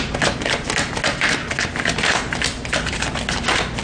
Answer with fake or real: real